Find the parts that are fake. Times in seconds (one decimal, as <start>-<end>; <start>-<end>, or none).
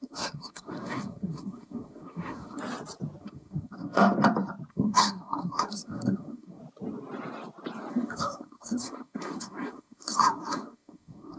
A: 0.0-2.6; 3.2-4.0; 4.7-6.6; 7.9-11.4